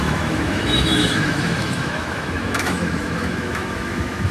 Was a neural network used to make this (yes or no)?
yes